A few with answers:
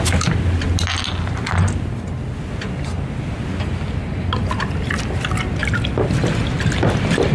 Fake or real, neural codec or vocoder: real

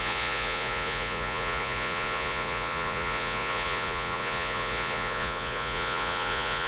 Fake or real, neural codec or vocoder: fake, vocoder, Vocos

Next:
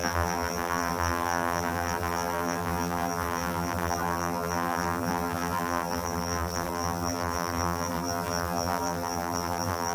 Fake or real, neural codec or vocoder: fake, vocoder, BigVGAN v2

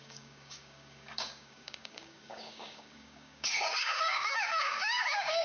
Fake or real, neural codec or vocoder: fake, codec, DAC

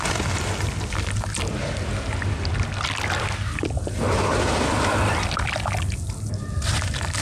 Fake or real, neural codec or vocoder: real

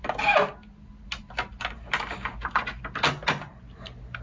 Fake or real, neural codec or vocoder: real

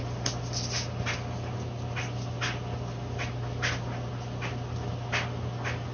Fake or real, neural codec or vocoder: real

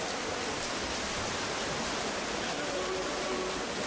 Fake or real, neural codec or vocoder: real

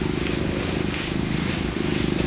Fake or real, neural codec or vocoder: real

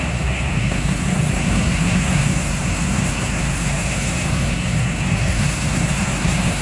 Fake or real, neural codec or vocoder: fake, codec, SNAC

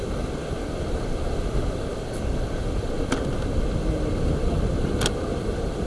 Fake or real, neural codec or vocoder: real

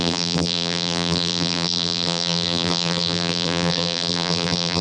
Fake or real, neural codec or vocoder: fake, vocoder, BigVGAN v2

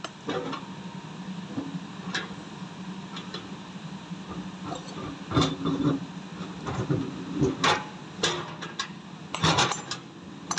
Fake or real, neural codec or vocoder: real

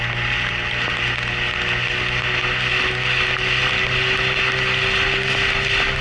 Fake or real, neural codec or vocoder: real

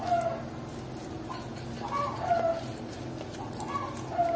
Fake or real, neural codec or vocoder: real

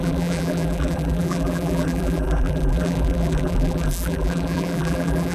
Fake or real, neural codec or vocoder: fake, vocoder, BigVGAN v2